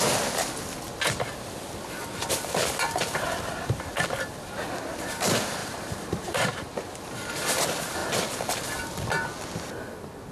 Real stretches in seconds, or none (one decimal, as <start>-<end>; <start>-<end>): 0.0-5.6; 6.7-10.3